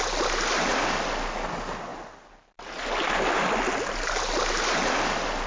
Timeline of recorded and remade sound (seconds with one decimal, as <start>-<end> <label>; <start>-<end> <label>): 0.0-5.5 recorded